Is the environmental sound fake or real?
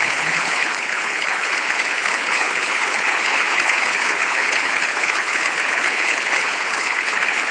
fake